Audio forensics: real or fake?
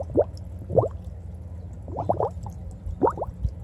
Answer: real